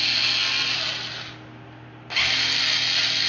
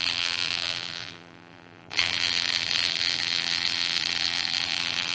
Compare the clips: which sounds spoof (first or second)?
second